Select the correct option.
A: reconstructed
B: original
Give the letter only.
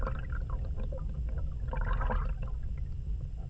B